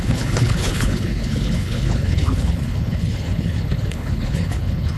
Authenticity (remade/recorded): remade